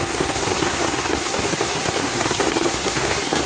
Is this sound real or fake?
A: fake